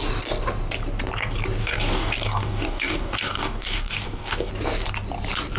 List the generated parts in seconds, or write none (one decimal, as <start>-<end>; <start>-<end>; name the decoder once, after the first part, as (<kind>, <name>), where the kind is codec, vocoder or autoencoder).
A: 1.6-4.5 (codec, DAC)